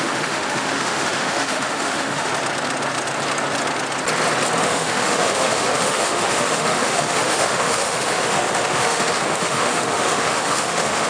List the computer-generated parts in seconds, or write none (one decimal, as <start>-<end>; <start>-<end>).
0.0-2.3; 4.6-11.1